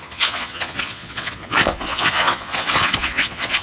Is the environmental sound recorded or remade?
remade